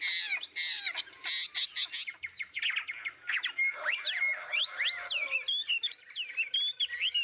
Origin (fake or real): real